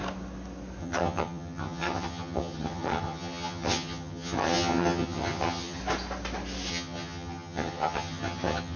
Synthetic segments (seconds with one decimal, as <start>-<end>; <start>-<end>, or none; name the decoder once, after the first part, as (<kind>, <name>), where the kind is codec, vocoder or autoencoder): 0.8-5.8 (vocoder, HiFi-GAN); 6.7-8.8